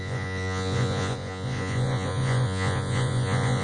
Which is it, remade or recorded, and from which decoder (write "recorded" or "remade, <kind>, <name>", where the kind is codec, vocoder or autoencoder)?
remade, vocoder, Vocos